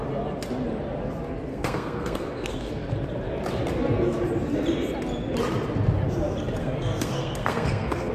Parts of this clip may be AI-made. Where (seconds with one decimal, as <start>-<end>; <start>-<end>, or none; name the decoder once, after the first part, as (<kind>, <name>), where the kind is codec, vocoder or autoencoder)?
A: 1.5-2.7 (codec, SNAC); 6.6-8.1